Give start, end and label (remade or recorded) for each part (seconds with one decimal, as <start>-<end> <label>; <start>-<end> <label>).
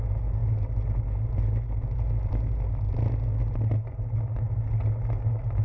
0.0-5.6 recorded